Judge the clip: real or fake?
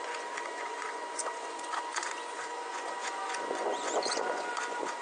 fake